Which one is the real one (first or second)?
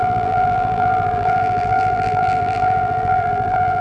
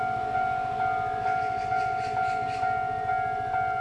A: second